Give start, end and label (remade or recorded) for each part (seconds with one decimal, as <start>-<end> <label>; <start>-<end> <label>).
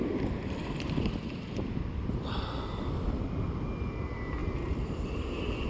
0.0-3.2 remade; 3.2-4.4 recorded; 4.4-4.9 remade; 4.9-5.7 recorded